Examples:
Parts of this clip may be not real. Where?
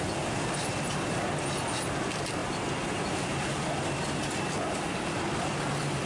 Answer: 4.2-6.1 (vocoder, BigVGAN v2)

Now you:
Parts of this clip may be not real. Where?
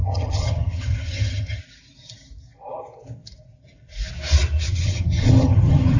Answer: 0.0-1.6 (vocoder, HiFi-GAN); 4.7-6.0